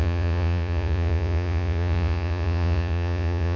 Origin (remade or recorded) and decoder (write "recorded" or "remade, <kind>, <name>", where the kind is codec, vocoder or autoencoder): remade, vocoder, Vocos